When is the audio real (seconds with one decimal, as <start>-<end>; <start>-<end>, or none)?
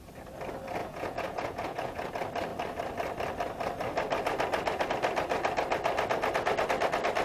0.0-0.8; 2.1-7.2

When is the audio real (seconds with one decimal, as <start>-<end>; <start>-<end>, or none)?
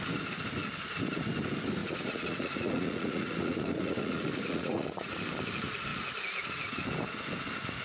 0.0-1.8; 5.3-7.8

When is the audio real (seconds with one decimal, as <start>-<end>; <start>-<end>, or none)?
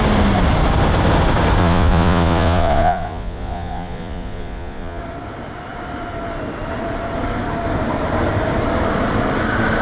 0.0-1.6; 5.0-9.8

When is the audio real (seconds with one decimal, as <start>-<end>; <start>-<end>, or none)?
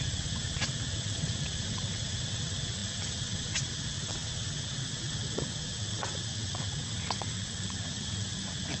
none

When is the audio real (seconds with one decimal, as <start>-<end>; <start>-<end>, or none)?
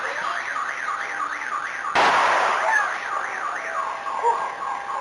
1.6-2.1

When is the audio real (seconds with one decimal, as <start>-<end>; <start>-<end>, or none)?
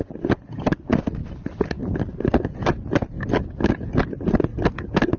0.0-5.2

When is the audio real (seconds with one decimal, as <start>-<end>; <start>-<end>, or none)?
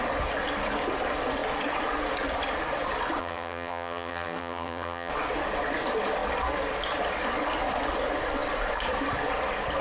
0.0-3.2; 5.1-9.8